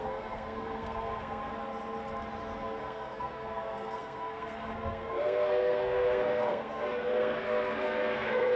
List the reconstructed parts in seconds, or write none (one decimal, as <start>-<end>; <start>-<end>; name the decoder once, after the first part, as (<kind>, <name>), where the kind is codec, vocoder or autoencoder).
0.0-1.5 (codec, SNAC); 2.8-8.6